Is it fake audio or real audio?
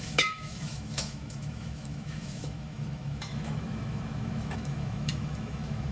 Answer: fake